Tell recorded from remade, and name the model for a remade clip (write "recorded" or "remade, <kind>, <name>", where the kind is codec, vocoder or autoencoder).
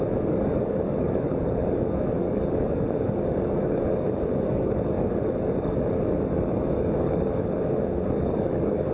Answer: remade, codec, DAC